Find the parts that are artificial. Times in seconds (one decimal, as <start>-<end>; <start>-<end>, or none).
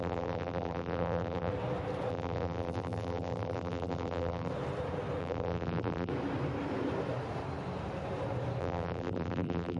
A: 0.0-1.5; 2.1-4.5; 5.2-6.1; 8.6-9.8